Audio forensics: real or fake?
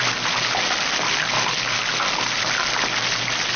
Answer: real